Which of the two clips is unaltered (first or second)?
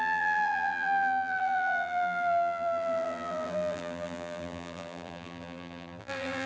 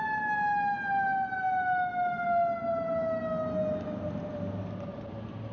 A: second